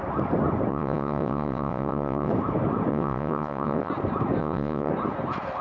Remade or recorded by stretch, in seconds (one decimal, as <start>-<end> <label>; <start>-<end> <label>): 0.0-0.7 recorded; 0.7-2.3 remade; 2.3-2.9 recorded; 2.9-3.9 remade; 3.9-4.4 recorded; 4.4-4.9 remade; 4.9-5.6 recorded